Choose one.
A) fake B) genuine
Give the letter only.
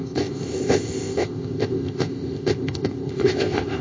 A